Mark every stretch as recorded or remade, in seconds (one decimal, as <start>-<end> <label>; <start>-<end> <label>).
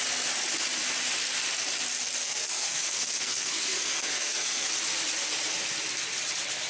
0.0-2.2 recorded; 2.2-4.7 remade; 4.7-6.7 recorded